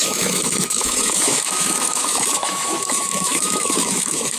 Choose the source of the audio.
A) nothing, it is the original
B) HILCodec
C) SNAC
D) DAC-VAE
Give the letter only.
D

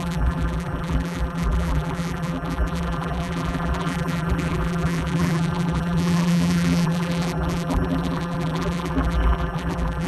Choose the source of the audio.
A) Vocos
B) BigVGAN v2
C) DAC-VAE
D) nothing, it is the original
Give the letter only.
B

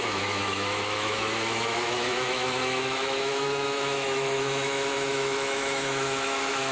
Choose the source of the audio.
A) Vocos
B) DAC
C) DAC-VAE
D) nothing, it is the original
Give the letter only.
C